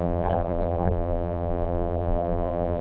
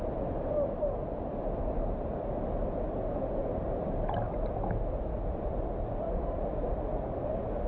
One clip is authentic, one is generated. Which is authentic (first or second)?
second